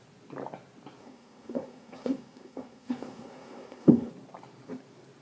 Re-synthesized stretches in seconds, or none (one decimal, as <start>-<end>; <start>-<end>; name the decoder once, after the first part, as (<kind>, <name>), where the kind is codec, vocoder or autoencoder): 1.0-4.1 (codec, SNAC)